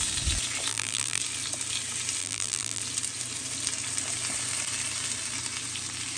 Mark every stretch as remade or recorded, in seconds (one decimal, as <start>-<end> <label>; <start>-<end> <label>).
0.0-0.7 recorded; 0.7-1.2 remade; 1.2-2.2 recorded; 2.2-2.8 remade; 2.8-6.2 recorded